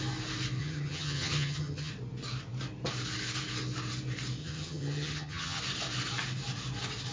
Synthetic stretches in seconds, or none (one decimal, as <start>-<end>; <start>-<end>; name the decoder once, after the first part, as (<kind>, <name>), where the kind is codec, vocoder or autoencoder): 0.6-1.9 (vocoder, HiFi-GAN); 4.4-5.6